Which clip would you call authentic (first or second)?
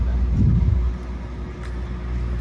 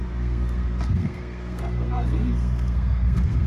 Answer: first